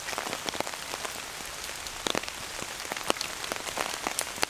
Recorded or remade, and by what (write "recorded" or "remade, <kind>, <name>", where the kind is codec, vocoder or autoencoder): remade, vocoder, BigVGAN v2